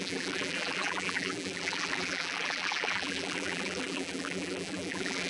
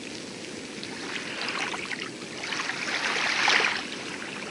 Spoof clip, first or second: first